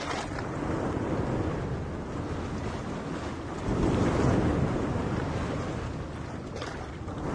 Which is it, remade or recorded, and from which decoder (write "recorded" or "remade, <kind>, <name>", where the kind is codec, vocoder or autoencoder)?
recorded